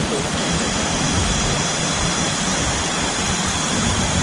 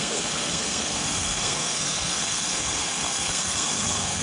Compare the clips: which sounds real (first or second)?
first